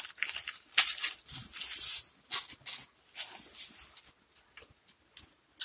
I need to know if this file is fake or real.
real